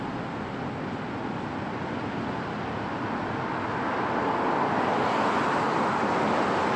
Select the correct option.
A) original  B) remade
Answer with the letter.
A